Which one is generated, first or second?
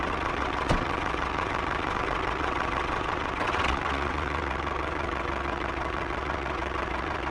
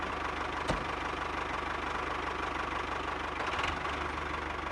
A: first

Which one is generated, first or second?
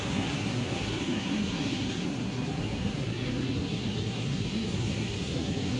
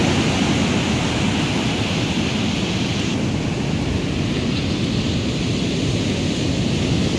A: first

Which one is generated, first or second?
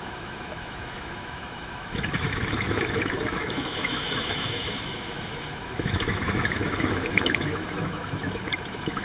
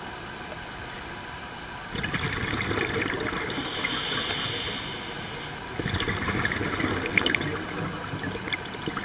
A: first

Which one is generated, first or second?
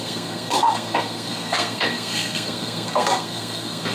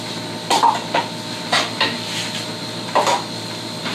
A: first